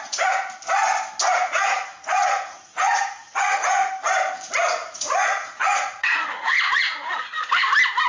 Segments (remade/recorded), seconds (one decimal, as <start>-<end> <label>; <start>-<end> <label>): 0.0-1.4 recorded; 1.4-3.9 remade; 3.9-4.8 recorded; 4.8-7.2 remade; 7.2-8.1 recorded